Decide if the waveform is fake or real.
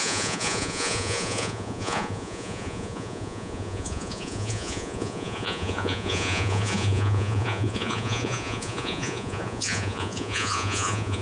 fake